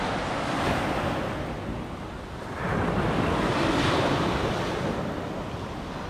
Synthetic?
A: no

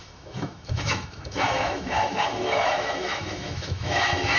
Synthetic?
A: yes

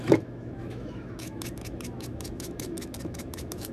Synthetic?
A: yes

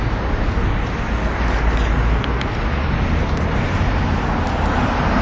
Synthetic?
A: no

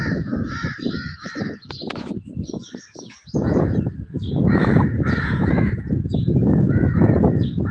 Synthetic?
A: yes